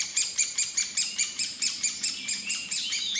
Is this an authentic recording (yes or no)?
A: no